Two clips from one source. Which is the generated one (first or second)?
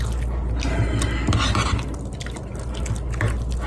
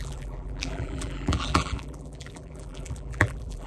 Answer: second